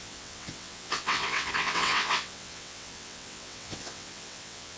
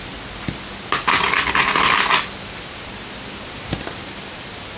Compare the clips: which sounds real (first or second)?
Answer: second